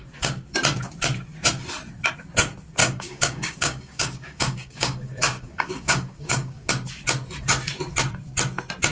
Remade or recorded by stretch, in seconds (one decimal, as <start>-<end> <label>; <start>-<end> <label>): 0.0-2.8 recorded; 2.8-6.7 remade; 6.7-8.9 recorded